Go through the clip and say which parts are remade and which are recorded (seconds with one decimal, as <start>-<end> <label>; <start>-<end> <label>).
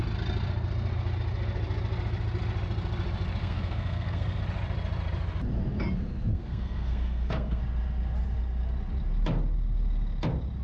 0.0-3.4 recorded; 3.4-4.4 remade; 4.4-6.3 recorded; 6.3-7.6 remade; 7.6-10.6 recorded